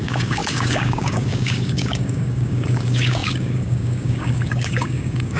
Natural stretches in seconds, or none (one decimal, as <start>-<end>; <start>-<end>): none